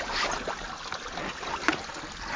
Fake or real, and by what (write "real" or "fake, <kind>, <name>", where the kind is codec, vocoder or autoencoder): real